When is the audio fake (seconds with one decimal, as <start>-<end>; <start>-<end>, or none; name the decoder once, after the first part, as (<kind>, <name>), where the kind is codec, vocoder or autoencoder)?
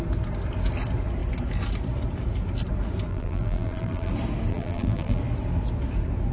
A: 3.1-4.1 (vocoder, BigVGAN v2); 4.5-5.2